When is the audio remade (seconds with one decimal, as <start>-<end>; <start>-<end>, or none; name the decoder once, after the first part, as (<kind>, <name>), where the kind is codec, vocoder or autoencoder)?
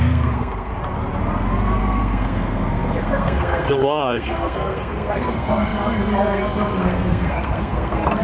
0.0-0.7 (codec, SNAC); 1.8-8.2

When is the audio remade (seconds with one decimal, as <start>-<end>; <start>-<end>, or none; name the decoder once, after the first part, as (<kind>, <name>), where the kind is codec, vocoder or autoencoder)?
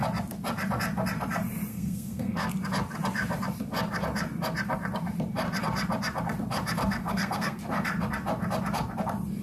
1.7-2.5 (codec, SNAC); 7.0-7.6